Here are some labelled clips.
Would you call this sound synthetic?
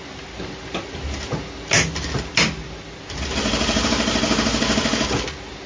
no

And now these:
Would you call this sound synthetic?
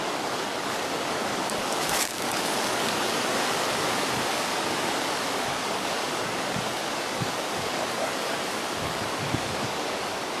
yes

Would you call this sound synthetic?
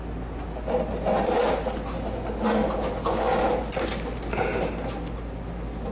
no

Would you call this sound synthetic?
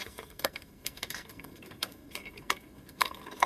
yes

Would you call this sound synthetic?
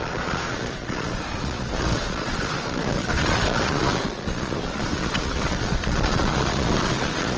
yes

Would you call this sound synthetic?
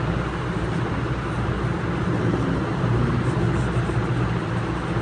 no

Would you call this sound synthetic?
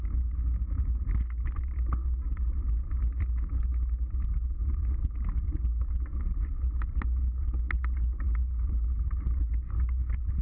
no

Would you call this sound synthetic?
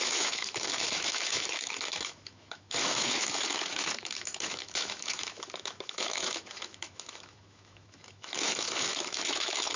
yes